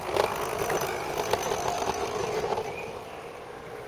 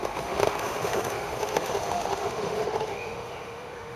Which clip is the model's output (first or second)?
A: second